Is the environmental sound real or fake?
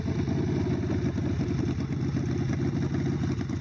real